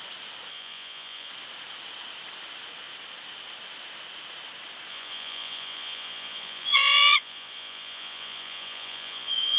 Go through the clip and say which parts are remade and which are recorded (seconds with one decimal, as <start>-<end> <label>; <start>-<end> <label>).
0.0-0.5 recorded; 0.5-1.3 remade; 1.3-4.9 recorded; 4.9-9.6 remade